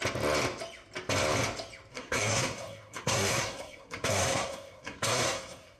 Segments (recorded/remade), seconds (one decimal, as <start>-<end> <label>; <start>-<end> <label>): 0.0-1.9 recorded; 1.9-5.8 remade